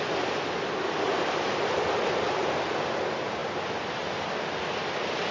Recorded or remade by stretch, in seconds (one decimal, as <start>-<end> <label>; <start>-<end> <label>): 0.0-5.3 recorded